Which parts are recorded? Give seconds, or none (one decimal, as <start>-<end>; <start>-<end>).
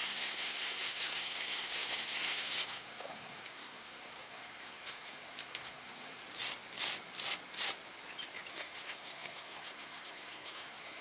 6.2-8.5